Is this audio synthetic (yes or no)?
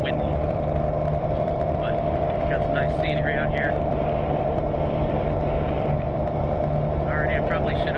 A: yes